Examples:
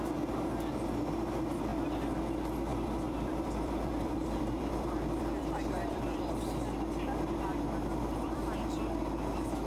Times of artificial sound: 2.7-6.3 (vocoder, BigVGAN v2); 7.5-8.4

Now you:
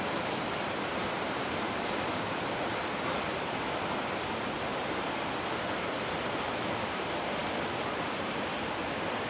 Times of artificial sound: 0.0-1.0 (vocoder, BigVGAN v2); 3.3-4.7; 5.8-9.3

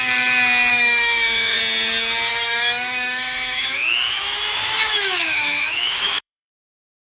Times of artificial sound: 0.7-1.6 (autoencoder, DAC-VAE); 2.3-6.5